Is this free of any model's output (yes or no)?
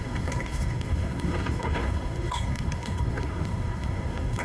no